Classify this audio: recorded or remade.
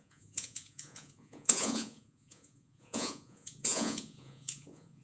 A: remade